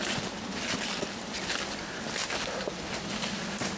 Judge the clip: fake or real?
real